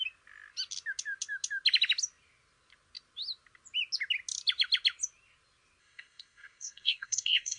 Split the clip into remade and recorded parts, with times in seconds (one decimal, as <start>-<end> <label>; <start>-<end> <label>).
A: 0.0-5.8 recorded; 5.8-7.6 remade